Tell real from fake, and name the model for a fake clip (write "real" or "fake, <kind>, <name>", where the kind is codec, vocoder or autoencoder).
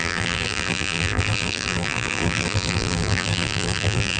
fake, vocoder, BigVGAN v2